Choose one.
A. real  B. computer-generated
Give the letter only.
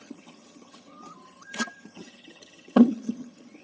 B